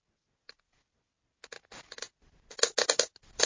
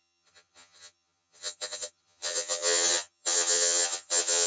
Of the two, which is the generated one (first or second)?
second